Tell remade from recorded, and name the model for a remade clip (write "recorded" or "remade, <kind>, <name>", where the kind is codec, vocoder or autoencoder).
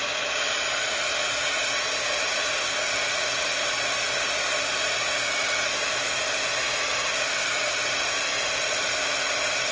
recorded